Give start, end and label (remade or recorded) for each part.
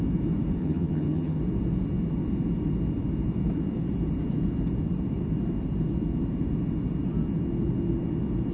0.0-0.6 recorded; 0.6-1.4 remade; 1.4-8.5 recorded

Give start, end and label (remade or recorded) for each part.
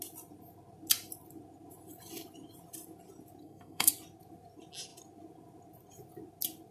0.0-3.4 recorded; 3.4-3.9 remade; 3.9-6.7 recorded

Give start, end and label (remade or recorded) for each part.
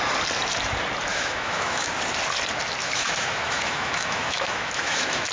0.0-1.1 recorded; 1.1-1.9 remade; 1.9-2.8 recorded; 2.8-5.3 remade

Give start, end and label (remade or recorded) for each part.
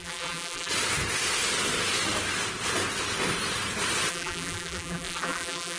0.0-0.7 remade; 0.7-4.1 recorded; 4.1-5.8 remade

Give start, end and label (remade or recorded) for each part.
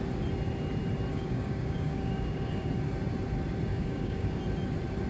0.0-1.1 recorded; 1.1-2.7 remade; 2.7-3.7 recorded; 3.7-4.4 remade; 4.4-5.1 recorded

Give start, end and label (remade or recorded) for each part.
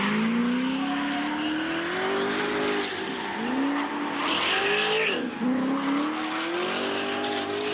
0.0-7.7 recorded